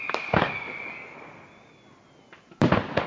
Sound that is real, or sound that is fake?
real